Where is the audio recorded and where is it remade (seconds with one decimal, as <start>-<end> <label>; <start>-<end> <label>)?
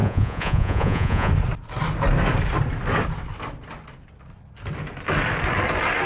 0.0-1.3 remade; 1.3-6.1 recorded